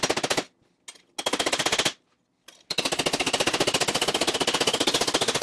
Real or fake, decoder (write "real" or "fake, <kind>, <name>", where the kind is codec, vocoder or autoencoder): real